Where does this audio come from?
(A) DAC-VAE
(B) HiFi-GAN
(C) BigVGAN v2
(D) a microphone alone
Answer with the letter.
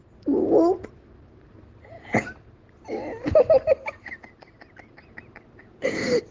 D